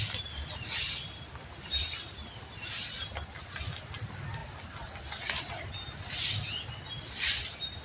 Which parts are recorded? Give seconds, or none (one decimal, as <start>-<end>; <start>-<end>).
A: 0.0-7.8